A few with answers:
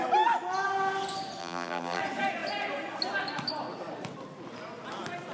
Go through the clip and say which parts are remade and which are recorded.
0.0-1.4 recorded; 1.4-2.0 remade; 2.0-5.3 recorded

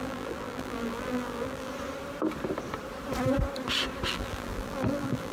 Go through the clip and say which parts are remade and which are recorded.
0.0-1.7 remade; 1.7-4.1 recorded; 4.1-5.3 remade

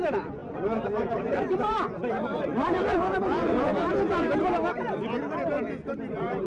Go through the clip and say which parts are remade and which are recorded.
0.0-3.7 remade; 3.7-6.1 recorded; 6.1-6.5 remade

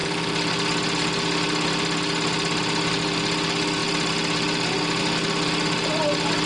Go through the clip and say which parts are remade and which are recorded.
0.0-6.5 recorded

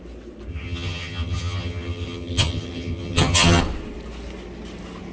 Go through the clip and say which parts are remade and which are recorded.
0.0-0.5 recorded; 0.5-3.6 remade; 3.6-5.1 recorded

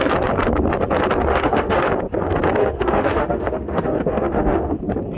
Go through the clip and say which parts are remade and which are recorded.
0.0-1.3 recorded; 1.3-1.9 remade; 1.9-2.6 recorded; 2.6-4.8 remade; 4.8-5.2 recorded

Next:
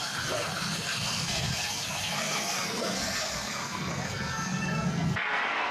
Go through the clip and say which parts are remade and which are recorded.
0.0-5.7 remade

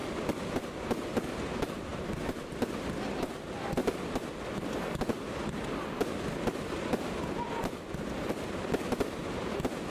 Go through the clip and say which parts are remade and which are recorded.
0.0-1.9 recorded; 1.9-2.5 remade; 2.5-9.9 recorded